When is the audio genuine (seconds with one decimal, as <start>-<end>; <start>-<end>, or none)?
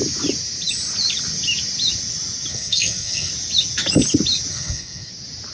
0.0-2.5; 3.3-4.5; 5.1-5.5